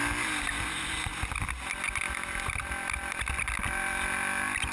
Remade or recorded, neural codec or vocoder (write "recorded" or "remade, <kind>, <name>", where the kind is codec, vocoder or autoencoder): recorded